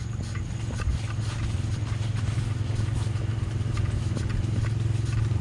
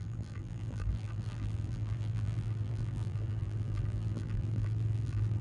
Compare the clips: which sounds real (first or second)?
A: first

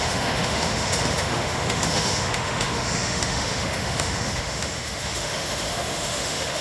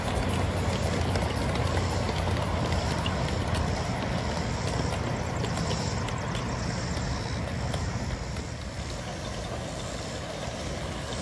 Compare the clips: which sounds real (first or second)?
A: second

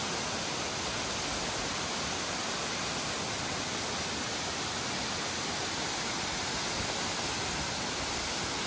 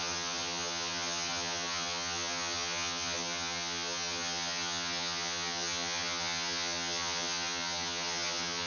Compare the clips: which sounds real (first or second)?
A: first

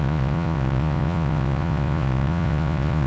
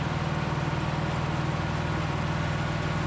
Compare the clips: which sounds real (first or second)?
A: second